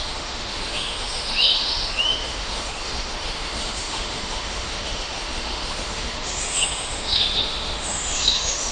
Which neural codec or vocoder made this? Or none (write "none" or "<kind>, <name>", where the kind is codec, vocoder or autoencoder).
autoencoder, DAC-VAE